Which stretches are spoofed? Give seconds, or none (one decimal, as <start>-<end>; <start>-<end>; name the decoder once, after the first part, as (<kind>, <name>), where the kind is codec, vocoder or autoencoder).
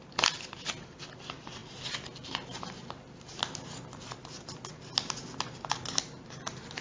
none